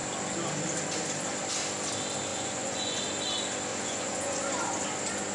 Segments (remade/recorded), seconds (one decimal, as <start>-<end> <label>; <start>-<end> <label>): 0.0-2.3 recorded; 2.3-3.0 remade; 3.0-3.7 recorded; 3.7-4.4 remade; 4.4-5.3 recorded